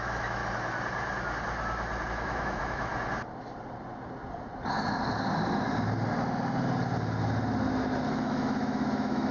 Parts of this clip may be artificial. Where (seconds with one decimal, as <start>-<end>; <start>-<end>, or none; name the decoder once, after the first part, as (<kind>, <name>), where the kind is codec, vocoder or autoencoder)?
0.0-0.4 (autoencoder, DAC-VAE); 2.1-2.9; 8.1-9.3